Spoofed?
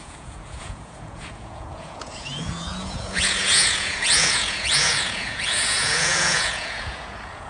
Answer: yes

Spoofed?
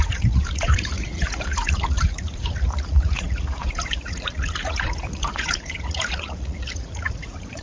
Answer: yes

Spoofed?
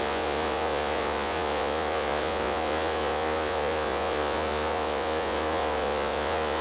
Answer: yes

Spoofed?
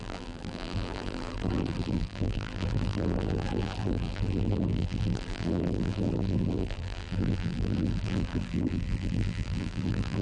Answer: yes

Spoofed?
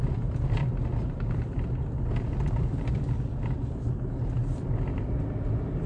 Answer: no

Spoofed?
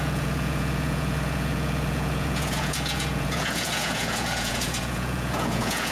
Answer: yes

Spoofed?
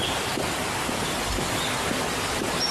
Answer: no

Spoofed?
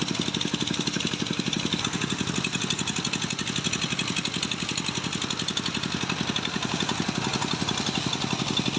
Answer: no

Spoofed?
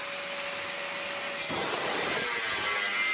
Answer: no